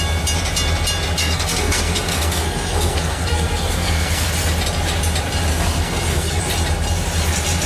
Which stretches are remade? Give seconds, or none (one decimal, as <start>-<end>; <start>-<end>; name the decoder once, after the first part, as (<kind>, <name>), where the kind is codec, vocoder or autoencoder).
1.2-4.3 (codec, SNAC); 5.5-6.4